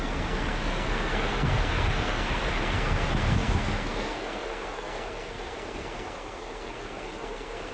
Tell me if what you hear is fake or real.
fake